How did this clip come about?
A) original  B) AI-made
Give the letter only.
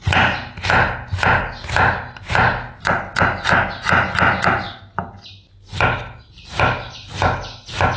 A